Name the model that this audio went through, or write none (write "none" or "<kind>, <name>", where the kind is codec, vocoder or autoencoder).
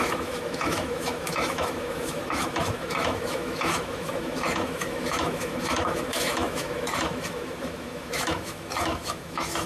autoencoder, DAC-VAE